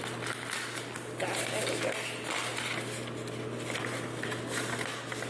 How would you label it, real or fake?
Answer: real